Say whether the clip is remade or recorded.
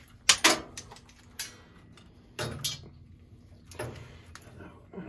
recorded